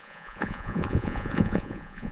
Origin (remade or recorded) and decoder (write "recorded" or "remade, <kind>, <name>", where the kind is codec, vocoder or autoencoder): remade, vocoder, Vocos